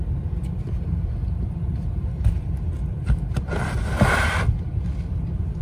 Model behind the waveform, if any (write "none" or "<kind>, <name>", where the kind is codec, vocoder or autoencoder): none